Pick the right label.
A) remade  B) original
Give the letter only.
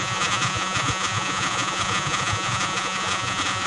A